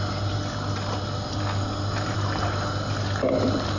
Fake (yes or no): no